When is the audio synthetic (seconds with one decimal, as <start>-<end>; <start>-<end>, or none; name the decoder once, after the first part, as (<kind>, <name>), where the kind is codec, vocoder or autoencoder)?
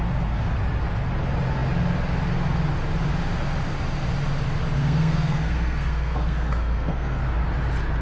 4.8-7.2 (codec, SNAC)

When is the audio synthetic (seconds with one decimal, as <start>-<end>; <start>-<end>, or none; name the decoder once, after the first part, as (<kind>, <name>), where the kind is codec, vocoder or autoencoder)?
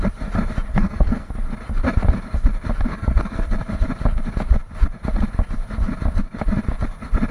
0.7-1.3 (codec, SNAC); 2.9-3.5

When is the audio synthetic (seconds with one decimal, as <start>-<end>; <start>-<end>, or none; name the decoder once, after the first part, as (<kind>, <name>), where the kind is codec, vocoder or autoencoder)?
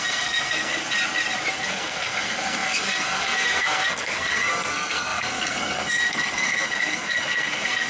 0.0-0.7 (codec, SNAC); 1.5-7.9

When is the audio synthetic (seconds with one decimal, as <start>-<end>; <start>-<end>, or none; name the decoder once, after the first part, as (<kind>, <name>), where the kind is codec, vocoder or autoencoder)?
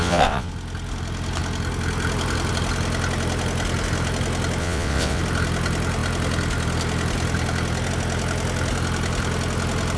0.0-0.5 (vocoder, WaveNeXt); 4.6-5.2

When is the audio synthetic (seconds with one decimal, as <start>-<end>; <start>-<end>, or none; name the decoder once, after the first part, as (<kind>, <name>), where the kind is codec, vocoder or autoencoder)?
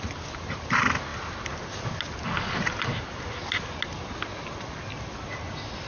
none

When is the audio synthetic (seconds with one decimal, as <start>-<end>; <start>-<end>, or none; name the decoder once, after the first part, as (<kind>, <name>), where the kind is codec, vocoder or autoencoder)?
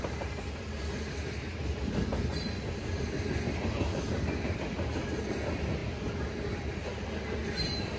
none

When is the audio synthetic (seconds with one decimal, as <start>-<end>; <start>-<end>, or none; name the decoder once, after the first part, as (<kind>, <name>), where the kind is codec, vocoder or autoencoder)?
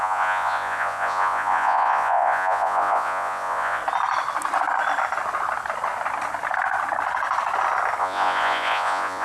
0.0-3.8 (vocoder, Vocos); 8.0-9.2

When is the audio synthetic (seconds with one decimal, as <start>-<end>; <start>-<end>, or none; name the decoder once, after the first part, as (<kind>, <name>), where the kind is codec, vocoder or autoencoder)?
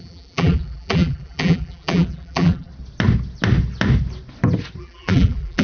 0.0-2.7 (vocoder, BigVGAN v2); 4.8-5.6